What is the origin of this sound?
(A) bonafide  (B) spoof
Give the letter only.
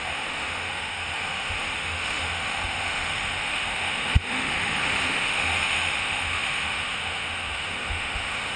B